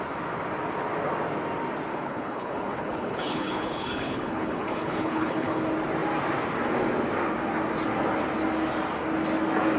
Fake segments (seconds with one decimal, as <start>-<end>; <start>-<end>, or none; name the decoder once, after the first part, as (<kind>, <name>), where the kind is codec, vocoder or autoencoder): 1.9-5.6 (codec, HILCodec)